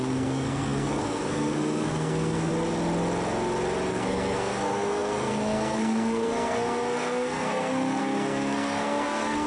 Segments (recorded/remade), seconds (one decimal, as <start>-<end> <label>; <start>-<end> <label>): 0.0-2.5 remade; 2.5-3.9 recorded; 3.9-9.5 remade